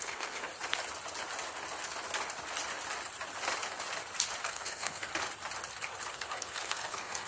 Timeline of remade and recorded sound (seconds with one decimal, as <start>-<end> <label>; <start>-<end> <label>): 0.0-0.5 remade; 0.5-4.4 recorded; 4.4-5.1 remade; 5.1-6.1 recorded; 6.1-7.3 remade